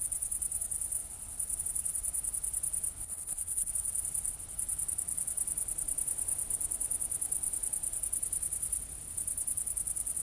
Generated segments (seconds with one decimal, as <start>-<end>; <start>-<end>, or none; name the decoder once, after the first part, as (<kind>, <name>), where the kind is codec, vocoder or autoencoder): 3.0-3.7 (codec, HILCodec)

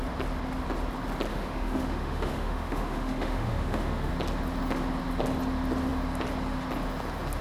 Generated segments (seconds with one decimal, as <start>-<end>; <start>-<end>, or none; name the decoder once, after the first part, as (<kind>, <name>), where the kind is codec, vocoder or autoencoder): 1.3-4.1 (autoencoder, DAC-VAE)